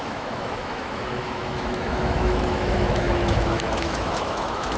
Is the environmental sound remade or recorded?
remade